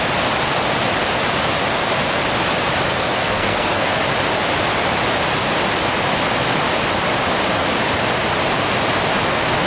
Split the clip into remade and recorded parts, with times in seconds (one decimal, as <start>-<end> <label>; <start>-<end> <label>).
0.0-2.9 recorded; 2.9-4.0 remade; 4.0-9.7 recorded